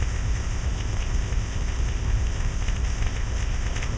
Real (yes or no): no